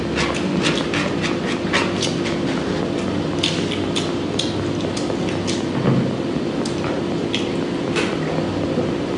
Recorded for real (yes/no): yes